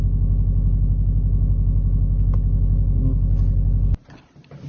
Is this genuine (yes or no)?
yes